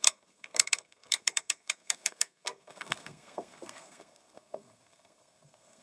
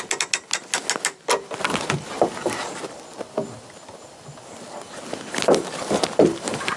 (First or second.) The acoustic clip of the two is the second